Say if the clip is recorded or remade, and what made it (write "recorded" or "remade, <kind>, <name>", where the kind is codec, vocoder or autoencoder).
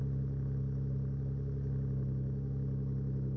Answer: recorded